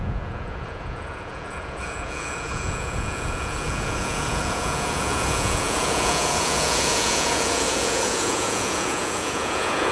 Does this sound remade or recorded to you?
remade